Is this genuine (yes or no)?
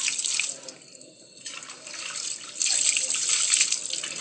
yes